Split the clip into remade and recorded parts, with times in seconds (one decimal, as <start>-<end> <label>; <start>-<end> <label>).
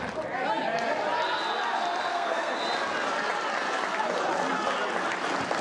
0.0-2.1 recorded; 2.1-2.6 remade; 2.6-5.6 recorded